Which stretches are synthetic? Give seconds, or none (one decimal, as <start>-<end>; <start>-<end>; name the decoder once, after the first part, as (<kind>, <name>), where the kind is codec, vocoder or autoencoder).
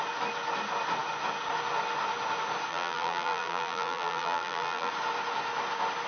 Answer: 2.7-4.9 (vocoder, BigVGAN v2)